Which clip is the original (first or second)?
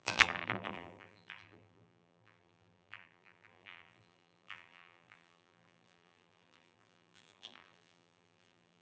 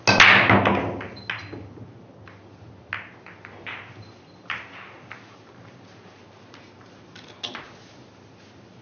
second